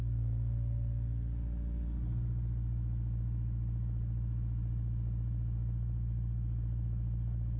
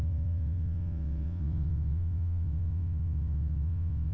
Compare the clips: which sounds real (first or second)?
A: first